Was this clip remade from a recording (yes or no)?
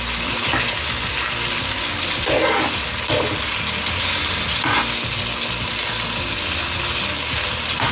no